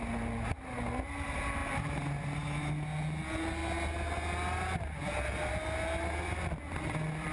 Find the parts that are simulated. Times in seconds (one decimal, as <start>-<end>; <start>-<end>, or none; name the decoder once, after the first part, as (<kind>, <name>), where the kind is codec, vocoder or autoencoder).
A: none